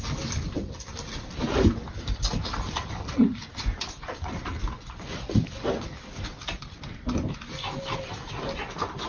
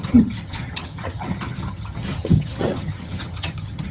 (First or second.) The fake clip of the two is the second